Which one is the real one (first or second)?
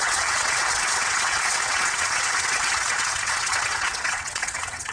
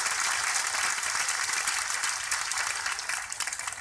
second